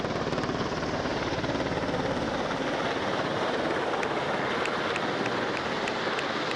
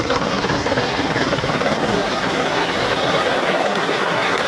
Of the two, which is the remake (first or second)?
second